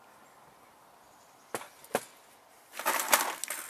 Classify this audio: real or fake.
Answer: real